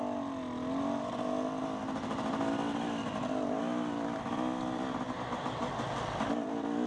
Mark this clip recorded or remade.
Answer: recorded